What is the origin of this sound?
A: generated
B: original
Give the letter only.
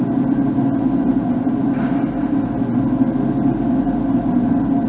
B